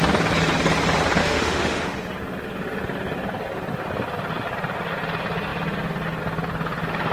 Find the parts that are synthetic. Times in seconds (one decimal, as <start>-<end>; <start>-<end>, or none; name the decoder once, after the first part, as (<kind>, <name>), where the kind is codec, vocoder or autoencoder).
1.2-1.9 (autoencoder, DAC-VAE)